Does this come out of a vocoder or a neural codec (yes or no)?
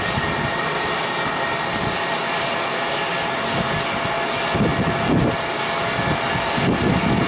no